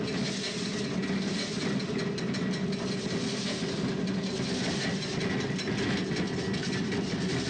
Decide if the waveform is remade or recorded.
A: recorded